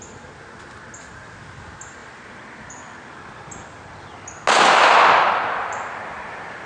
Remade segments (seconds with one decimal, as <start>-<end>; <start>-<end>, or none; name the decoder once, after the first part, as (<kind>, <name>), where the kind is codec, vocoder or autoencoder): none